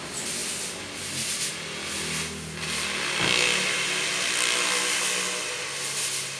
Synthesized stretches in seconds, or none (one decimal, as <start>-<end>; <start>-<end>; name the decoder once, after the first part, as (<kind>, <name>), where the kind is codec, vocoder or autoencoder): none